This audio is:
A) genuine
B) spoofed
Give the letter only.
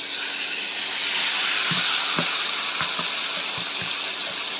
A